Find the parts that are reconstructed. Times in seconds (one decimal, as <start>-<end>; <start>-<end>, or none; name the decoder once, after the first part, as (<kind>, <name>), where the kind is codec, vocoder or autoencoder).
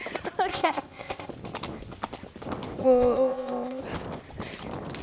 0.5-1.3 (codec, ZipCodec); 2.8-3.8